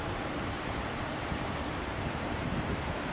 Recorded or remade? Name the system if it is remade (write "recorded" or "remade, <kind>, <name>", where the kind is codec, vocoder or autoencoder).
remade, vocoder, BigVGAN v2